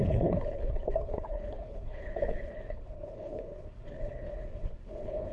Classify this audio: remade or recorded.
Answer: remade